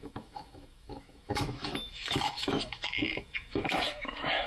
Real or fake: fake